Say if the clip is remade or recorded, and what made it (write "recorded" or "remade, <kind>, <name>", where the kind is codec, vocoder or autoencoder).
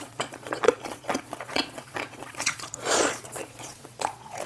remade, vocoder, Vocos